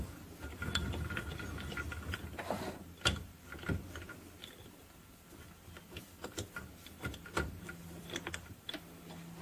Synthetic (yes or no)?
no